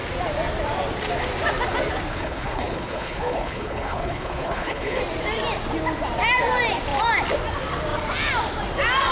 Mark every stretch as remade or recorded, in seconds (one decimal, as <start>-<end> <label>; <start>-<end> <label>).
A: 0.0-2.1 recorded; 2.1-5.0 remade; 5.0-9.1 recorded